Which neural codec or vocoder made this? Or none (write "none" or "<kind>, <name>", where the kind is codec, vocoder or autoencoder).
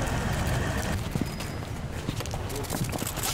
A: none